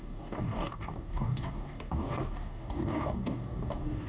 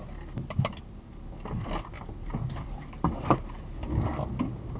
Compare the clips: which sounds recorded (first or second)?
second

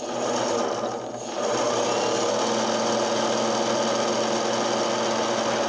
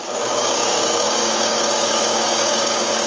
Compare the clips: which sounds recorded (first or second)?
first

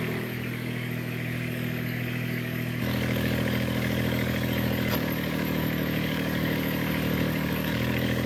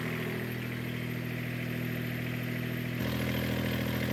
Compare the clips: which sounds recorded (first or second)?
second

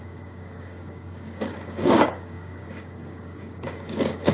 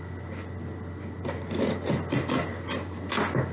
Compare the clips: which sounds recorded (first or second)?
second